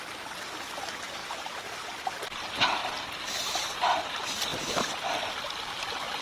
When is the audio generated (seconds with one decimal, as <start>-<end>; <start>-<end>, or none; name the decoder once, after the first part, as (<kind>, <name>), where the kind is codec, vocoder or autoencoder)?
1.2-2.0 (vocoder, BigVGAN v2)